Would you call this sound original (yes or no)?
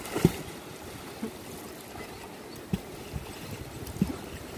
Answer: yes